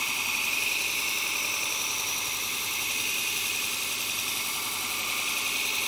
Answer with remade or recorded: remade